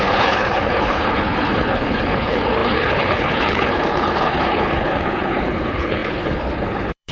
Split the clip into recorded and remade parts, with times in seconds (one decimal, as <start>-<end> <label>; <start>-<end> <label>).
0.0-7.1 remade